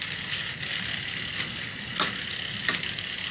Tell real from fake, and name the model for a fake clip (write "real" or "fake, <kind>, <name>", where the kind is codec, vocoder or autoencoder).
real